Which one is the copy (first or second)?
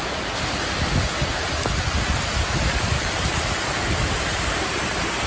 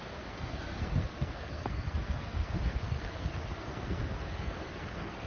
second